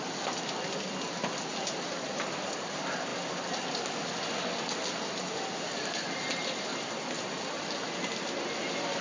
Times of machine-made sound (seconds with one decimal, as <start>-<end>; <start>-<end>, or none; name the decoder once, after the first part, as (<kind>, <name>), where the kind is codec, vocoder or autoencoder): none